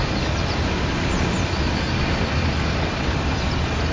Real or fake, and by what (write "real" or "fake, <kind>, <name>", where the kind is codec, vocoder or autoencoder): real